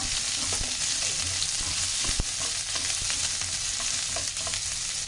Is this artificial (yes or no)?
no